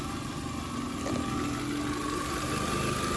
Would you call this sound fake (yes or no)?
no